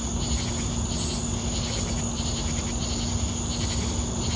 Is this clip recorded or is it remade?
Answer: recorded